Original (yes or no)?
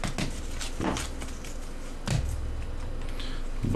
yes